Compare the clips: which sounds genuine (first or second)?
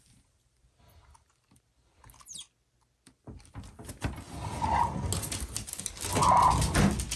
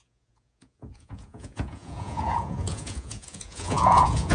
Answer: first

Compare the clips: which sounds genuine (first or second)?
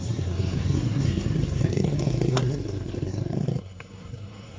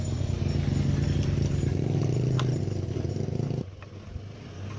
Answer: second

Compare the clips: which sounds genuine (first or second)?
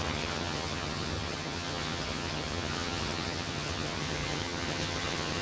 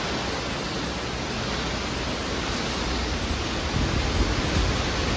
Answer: second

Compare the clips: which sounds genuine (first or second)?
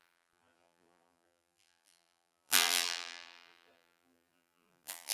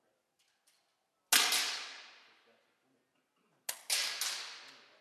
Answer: second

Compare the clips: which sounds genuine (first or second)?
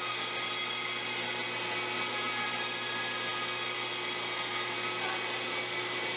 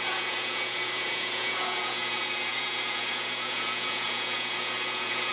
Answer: first